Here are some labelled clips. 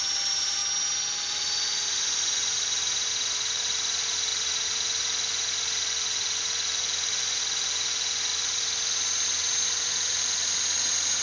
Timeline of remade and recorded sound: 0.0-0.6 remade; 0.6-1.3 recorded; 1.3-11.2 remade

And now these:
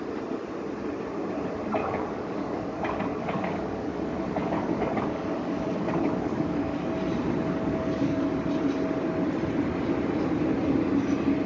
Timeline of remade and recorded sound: 0.0-1.8 recorded; 1.8-6.9 remade; 6.9-7.6 recorded; 7.6-8.3 remade; 8.3-11.5 recorded